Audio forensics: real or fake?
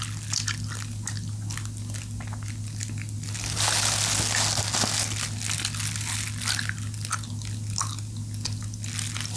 real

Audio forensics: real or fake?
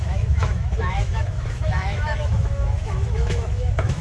fake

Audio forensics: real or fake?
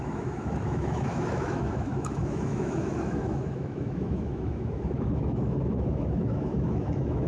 fake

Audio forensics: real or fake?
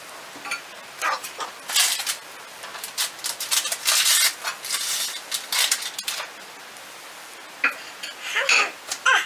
real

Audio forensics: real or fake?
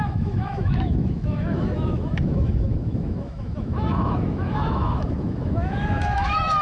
fake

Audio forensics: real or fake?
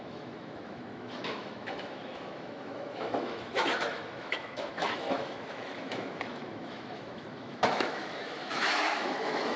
fake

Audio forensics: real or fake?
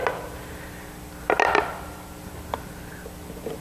real